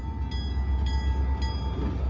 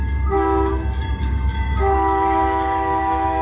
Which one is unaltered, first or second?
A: first